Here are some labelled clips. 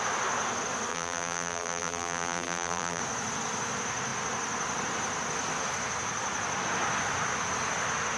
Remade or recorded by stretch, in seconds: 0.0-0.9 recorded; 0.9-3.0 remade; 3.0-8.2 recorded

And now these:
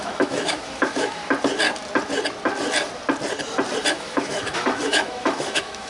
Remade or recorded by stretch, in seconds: 0.0-1.2 remade; 1.2-3.9 recorded; 3.9-5.9 remade

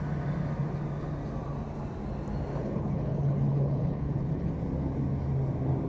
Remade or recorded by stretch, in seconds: 0.0-2.5 recorded; 2.5-4.5 remade; 4.5-5.9 recorded

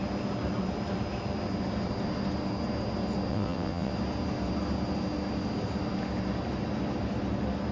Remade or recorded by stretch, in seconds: 0.0-3.3 recorded; 3.3-3.9 remade; 3.9-7.7 recorded